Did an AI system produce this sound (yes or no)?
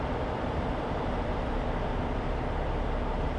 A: yes